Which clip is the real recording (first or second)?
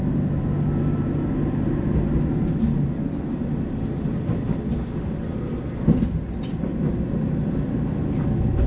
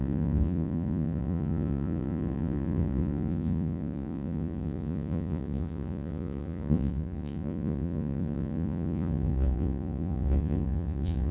first